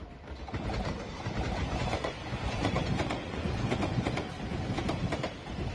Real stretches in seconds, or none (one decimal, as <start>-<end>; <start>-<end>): 0.0-1.6; 4.2-5.7